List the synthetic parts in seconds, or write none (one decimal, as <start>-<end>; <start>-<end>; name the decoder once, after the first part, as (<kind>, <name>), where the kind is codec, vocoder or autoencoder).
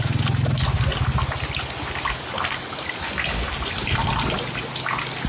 0.9-1.8 (vocoder, BigVGAN v2)